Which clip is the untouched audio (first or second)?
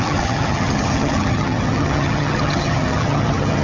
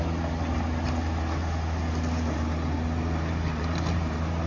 second